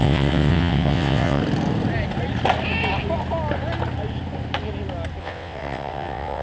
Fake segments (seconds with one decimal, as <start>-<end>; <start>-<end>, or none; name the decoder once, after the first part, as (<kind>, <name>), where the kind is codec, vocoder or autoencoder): 0.0-1.4 (vocoder, WaveNeXt); 5.2-6.4

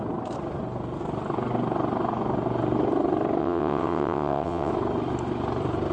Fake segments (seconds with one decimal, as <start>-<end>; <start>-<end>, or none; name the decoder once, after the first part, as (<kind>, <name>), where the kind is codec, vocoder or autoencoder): 3.4-4.7 (vocoder, WaveNeXt)